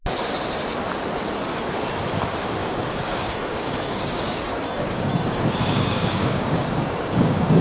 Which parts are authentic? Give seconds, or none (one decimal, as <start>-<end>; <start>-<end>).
0.0-2.6